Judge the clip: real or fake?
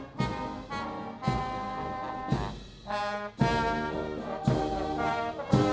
real